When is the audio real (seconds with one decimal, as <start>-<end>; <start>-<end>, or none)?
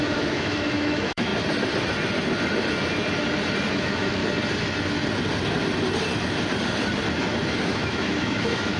1.3-3.7; 4.2-7.6